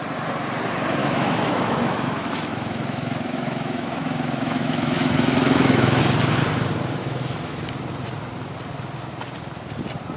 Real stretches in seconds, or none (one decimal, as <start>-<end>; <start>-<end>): 0.0-1.0; 6.0-7.0; 7.7-10.2